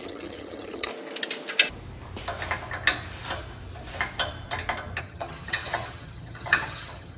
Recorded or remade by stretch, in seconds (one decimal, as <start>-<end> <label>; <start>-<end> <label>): 0.0-0.9 remade; 0.9-5.0 recorded; 5.0-7.2 remade